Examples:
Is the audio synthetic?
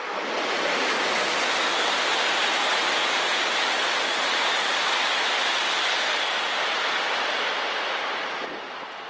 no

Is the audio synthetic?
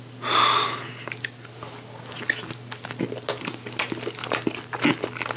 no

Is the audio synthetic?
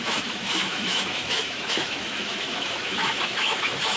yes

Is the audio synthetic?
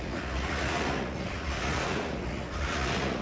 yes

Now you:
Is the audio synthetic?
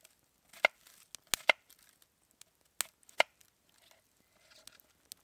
no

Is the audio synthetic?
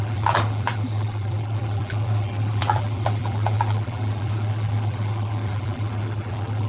yes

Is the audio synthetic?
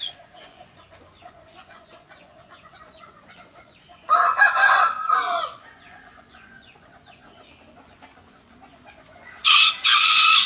yes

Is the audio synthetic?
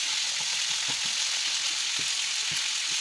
no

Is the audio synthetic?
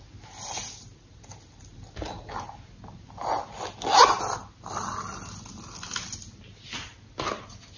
no